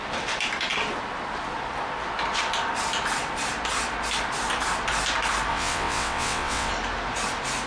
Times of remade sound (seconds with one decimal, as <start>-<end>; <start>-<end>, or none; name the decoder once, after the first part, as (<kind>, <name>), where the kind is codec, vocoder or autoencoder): 5.5-6.7 (vocoder, WaveNeXt)